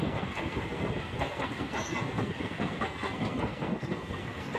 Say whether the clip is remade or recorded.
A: remade